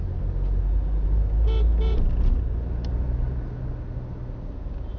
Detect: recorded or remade recorded